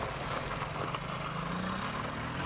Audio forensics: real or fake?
real